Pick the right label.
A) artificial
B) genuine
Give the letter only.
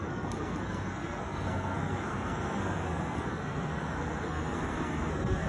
A